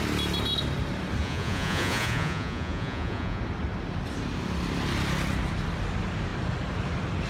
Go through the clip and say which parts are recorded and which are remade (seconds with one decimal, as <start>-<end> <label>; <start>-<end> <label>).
0.0-1.2 recorded; 1.2-3.4 remade; 3.4-7.3 recorded